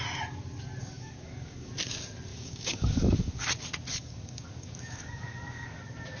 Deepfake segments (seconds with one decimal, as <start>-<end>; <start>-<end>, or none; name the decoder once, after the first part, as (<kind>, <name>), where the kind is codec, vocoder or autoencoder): 0.8-1.7 (codec, DAC); 2.3-3.5; 3.9-5.8